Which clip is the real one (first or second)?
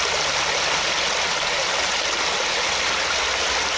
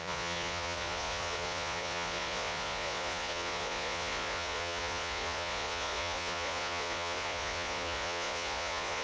first